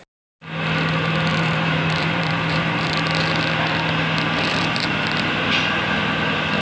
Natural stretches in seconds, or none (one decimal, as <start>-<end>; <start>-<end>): 0.0-1.3; 2.9-4.5; 5.4-6.6